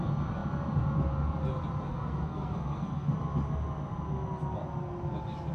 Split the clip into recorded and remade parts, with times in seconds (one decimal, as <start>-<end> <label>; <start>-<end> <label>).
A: 0.0-1.9 recorded; 1.9-3.1 remade; 3.1-5.5 recorded